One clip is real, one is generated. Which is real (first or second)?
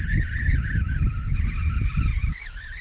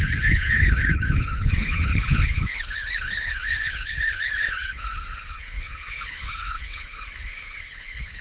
first